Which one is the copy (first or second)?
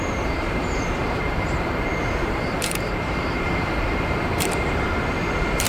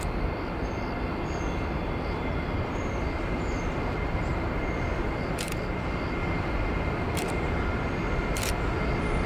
first